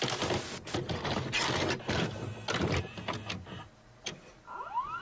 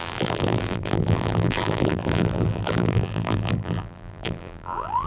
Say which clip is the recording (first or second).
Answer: first